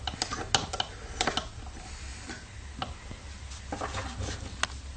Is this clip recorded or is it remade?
recorded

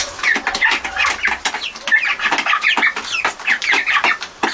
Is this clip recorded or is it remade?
recorded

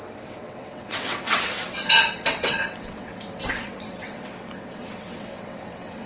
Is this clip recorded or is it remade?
remade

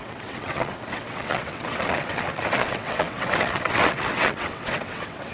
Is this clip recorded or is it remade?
remade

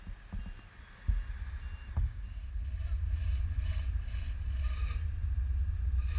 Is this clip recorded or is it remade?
recorded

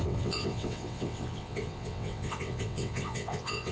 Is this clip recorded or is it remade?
remade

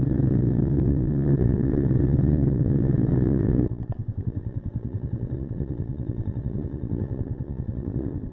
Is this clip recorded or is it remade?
remade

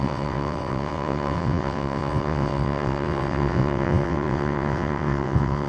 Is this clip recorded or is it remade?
remade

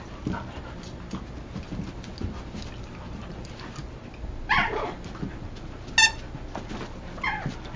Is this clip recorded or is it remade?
recorded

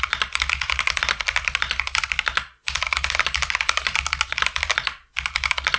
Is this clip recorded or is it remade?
recorded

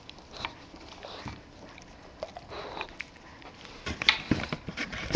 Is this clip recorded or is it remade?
recorded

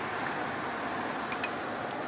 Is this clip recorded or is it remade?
recorded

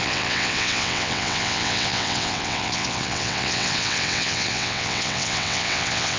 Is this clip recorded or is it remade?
remade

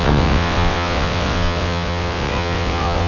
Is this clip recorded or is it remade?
remade